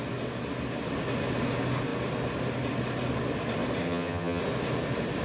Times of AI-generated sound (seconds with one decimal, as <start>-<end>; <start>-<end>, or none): 3.8-4.4